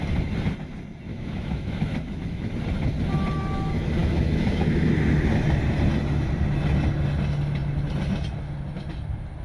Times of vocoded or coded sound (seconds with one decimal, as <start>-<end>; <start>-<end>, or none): 1.1-2.5; 4.0-4.9